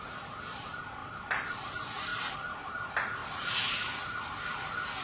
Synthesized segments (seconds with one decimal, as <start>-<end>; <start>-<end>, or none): 0.0-2.1; 2.7-3.2